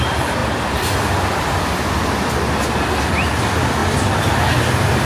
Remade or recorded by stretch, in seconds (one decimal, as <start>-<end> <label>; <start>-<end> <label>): 0.0-5.0 recorded